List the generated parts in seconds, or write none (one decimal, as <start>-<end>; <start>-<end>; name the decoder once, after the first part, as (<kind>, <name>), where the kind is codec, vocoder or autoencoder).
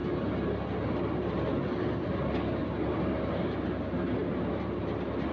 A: none